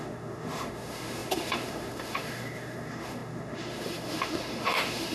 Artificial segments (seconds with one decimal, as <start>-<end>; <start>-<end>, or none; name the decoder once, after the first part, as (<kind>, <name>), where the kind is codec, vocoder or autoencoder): 0.0-5.1 (autoencoder, DAC-VAE)